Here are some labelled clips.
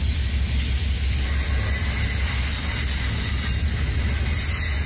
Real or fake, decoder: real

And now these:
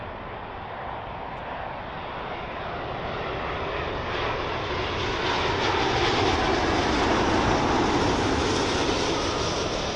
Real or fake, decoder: real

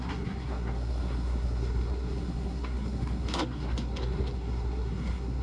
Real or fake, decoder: fake, codec, SNAC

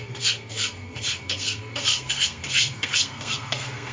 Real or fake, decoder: fake, codec, SNAC